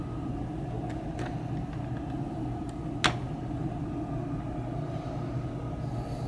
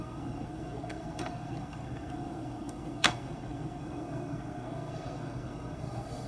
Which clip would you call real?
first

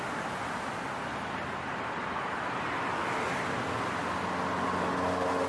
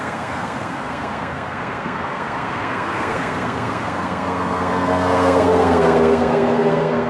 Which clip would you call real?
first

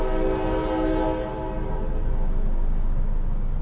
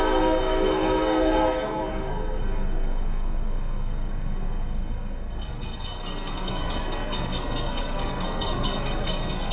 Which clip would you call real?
first